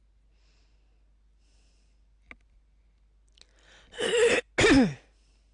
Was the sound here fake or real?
real